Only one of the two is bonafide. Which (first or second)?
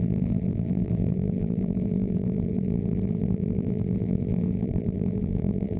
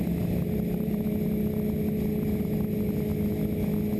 second